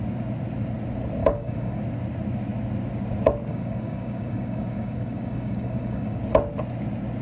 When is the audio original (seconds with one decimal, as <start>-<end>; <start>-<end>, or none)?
0.0-1.2; 1.8-3.5; 6.2-7.2